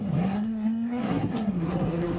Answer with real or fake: fake